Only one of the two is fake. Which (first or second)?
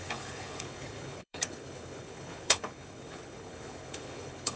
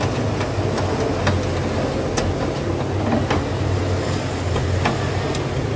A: first